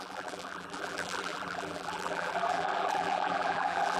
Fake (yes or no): yes